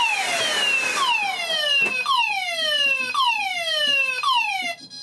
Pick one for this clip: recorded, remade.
recorded